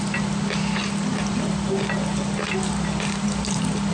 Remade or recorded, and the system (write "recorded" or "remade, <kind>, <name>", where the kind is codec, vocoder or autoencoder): recorded